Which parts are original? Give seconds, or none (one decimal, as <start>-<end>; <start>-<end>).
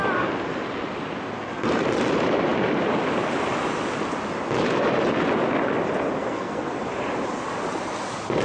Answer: 0.0-6.2; 6.8-8.4